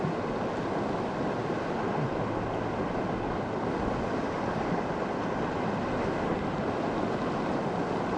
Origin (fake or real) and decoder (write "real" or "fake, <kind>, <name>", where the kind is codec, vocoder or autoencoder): real